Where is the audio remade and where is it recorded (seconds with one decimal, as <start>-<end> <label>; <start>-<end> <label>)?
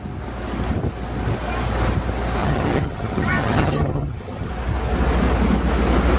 0.0-2.4 recorded; 2.4-4.5 remade; 4.5-6.2 recorded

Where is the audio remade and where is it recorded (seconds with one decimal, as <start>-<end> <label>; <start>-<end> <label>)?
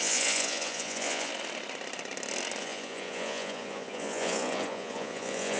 0.0-1.3 remade; 1.3-2.6 recorded; 2.6-5.6 remade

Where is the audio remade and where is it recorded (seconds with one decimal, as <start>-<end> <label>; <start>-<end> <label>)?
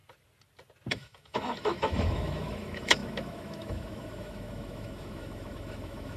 0.0-0.9 recorded; 0.9-6.2 remade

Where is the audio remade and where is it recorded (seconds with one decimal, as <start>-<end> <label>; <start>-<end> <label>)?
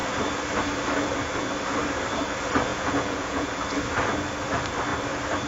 0.0-2.7 recorded; 2.7-3.5 remade; 3.5-5.5 recorded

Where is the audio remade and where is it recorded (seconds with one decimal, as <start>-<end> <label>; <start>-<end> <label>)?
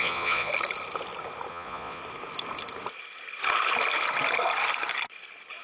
0.0-0.5 remade; 0.5-1.5 recorded; 1.5-2.0 remade; 2.0-5.6 recorded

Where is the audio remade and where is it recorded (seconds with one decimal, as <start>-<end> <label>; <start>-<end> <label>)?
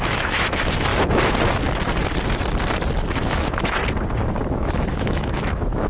0.0-0.9 remade; 0.9-3.2 recorded; 3.2-3.8 remade; 3.8-4.4 recorded; 4.4-5.9 remade